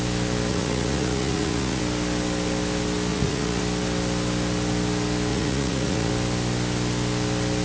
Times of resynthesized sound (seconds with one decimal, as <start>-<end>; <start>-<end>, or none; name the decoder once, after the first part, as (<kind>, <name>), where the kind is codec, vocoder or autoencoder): 0.5-1.8 (vocoder, Vocos); 3.1-3.6; 5.3-6.1